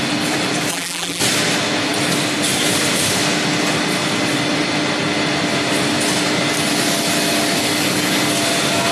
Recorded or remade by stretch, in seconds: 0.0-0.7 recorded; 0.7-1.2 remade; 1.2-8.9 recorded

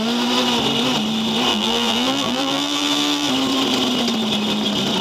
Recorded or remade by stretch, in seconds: 0.0-1.5 recorded; 1.5-3.3 remade; 3.3-5.0 recorded

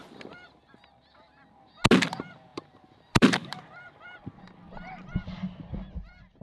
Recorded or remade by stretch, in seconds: 0.0-0.7 remade; 0.7-2.5 recorded; 2.5-3.6 remade; 3.6-6.4 recorded

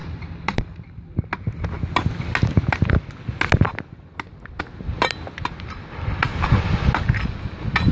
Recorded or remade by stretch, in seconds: 0.0-1.3 remade; 1.3-7.9 recorded

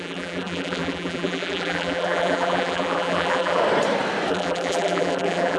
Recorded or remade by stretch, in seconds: 0.0-3.6 remade; 3.6-4.3 recorded; 4.3-5.6 remade

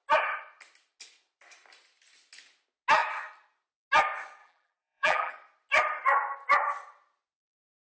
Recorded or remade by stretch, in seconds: 0.0-4.4 recorded; 4.4-5.3 remade; 5.3-7.8 recorded

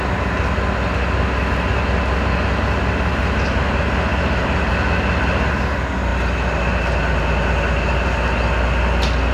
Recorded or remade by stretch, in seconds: 0.0-4.1 recorded; 4.1-4.7 remade; 4.7-9.3 recorded